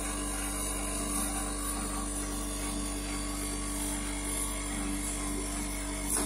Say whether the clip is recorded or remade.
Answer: recorded